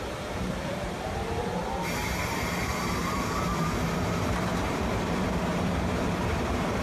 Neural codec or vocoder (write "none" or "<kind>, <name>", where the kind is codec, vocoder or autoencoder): vocoder, BigVGAN v2